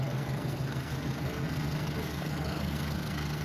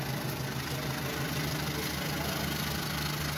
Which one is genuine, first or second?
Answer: second